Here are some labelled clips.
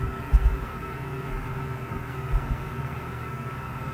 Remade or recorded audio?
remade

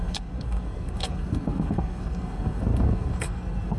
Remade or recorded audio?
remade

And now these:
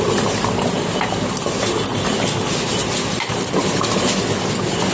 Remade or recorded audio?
recorded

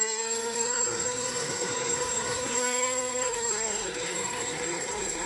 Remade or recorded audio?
remade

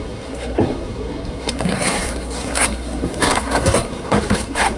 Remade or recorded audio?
remade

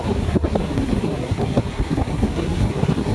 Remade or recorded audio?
remade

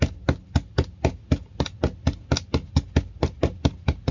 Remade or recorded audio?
recorded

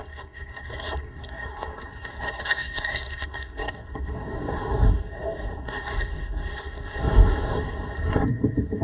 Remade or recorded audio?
remade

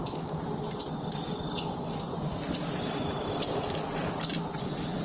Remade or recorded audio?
recorded